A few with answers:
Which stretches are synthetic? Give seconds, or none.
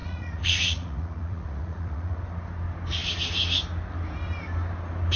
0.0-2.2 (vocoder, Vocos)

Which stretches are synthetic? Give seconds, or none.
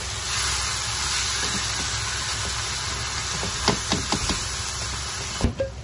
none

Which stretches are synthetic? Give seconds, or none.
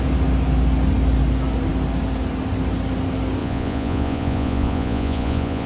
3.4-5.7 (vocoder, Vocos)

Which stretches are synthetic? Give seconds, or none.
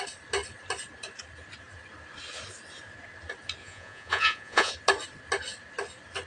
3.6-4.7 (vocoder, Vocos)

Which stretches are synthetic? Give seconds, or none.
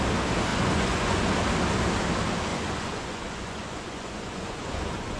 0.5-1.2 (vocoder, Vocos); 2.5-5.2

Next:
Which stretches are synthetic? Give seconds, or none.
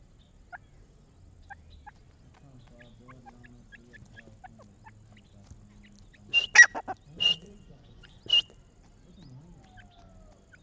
7.2-8.2 (vocoder, Vocos)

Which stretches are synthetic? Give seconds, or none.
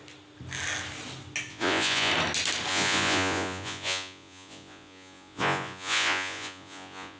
1.5-2.1 (vocoder, Vocos); 2.7-7.2